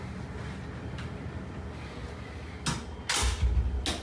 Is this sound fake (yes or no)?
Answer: no